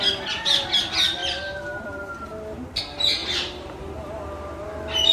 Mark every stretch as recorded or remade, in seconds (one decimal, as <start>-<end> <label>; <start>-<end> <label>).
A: 0.0-3.2 recorded; 3.2-5.1 remade